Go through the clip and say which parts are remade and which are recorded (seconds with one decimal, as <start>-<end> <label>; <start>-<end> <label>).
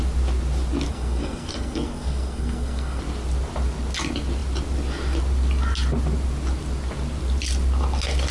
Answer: 0.0-0.9 recorded; 0.9-3.0 remade; 3.0-8.3 recorded